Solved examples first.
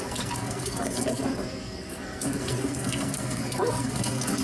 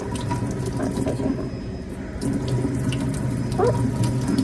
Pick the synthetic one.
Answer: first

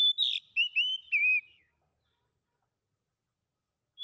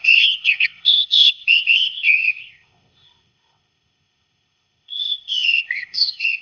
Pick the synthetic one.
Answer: second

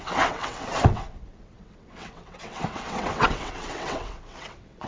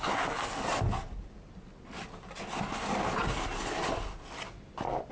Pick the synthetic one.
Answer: first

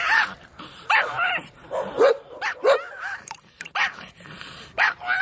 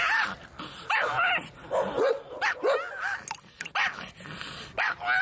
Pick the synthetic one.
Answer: first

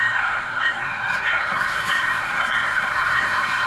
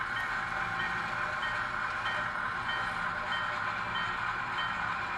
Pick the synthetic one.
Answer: first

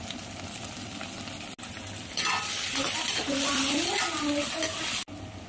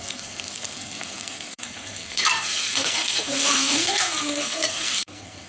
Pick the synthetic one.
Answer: second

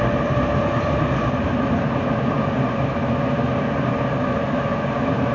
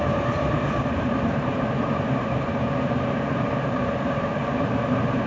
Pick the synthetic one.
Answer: second